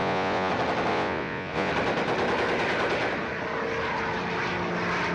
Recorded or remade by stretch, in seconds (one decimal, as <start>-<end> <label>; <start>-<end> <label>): 0.0-0.5 remade; 0.5-0.9 recorded; 0.9-1.7 remade; 1.7-5.1 recorded